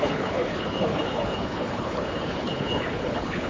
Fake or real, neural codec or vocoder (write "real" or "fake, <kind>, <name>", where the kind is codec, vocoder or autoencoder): fake, codec, HILCodec